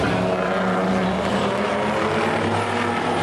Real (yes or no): yes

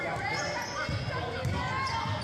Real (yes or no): yes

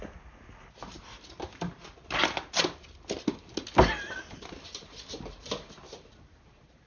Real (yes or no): yes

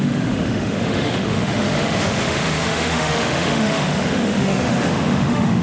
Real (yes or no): no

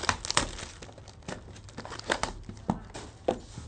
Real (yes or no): yes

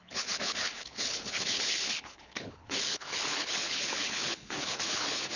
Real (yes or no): no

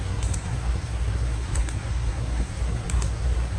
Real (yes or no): no